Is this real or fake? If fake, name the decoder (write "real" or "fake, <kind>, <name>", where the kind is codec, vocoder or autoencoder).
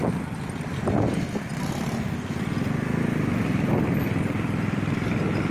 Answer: real